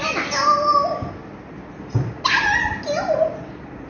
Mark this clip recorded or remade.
recorded